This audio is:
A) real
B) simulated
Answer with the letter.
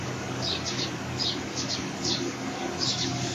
B